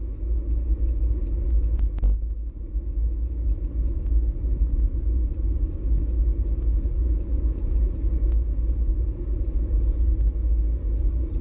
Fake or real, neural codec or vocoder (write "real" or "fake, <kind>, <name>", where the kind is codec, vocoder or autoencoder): real